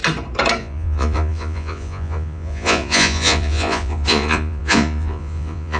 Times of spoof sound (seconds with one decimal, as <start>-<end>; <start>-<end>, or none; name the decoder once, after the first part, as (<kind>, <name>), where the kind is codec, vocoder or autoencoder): 0.6-5.8 (vocoder, Vocos)